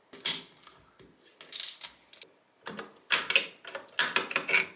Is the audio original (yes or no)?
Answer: yes